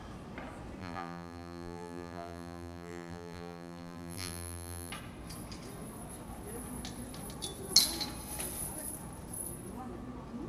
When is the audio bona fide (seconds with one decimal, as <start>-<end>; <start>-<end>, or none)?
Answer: 0.0-0.8; 4.9-10.5